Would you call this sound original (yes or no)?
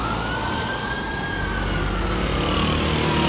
yes